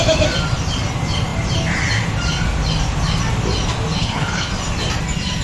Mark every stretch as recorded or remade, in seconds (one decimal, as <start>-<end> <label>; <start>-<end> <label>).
0.0-4.0 recorded; 4.0-4.5 remade; 4.5-5.4 recorded